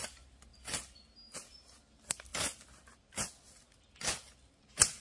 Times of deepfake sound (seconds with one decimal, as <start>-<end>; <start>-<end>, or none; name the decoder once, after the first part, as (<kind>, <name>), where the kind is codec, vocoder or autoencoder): none